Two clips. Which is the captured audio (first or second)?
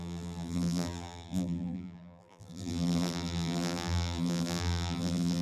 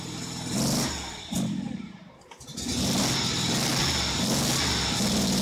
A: second